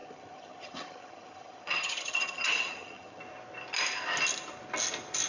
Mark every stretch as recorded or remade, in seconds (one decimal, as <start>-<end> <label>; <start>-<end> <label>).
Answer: 0.0-3.2 remade; 3.2-5.3 recorded